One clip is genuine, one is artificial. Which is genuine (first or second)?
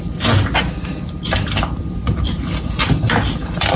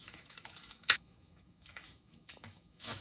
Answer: first